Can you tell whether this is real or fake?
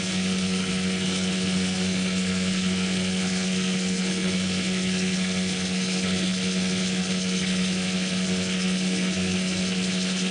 fake